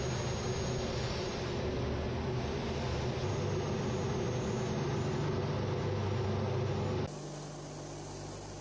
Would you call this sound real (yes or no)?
yes